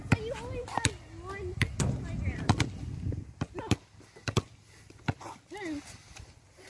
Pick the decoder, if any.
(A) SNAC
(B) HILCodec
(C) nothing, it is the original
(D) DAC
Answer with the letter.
C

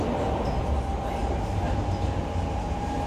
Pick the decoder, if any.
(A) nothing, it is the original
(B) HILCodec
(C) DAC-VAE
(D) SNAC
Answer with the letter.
A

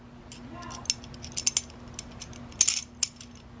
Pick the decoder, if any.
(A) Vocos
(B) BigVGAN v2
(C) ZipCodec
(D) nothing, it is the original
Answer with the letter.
D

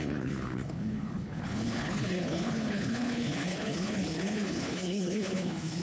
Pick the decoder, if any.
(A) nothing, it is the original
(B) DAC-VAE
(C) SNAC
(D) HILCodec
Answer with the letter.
D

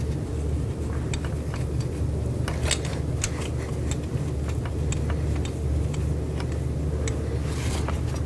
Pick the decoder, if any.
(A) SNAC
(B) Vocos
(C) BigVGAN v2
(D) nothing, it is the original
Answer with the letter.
D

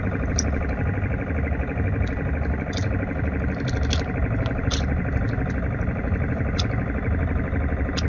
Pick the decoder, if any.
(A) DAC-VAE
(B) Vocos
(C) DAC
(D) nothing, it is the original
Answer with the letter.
D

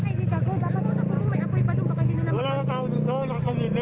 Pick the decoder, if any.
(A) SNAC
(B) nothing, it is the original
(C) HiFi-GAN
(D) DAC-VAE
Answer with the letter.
B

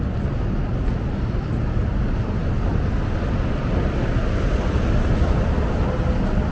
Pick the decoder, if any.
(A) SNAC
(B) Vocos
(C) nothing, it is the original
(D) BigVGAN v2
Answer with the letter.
C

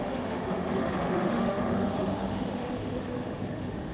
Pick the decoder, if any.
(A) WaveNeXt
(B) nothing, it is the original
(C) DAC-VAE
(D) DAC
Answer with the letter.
C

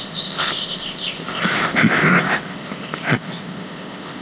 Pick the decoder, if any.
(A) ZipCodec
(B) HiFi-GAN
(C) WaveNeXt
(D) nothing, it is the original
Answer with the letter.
A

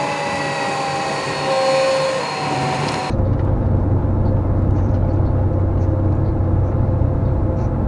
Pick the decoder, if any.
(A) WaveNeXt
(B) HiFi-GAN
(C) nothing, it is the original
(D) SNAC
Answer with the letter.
C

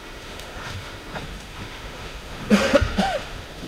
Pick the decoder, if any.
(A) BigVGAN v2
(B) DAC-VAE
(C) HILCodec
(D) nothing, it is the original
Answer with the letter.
B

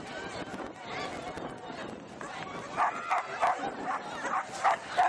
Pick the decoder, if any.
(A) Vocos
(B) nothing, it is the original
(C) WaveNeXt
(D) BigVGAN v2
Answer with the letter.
B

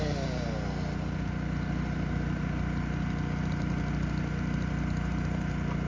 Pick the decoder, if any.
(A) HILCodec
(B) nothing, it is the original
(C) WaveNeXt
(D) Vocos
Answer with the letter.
B